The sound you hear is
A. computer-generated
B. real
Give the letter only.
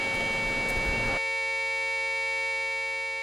B